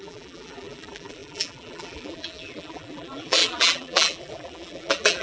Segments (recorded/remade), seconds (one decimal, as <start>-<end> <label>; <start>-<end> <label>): 0.0-5.2 remade